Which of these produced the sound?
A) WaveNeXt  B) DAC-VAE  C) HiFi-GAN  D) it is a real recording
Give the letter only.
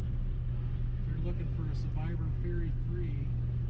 D